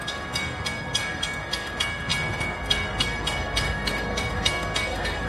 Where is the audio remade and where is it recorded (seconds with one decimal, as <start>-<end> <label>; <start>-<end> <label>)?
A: 0.0-5.3 remade